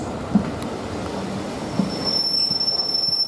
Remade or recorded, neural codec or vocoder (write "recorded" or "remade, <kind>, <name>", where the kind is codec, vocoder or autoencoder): recorded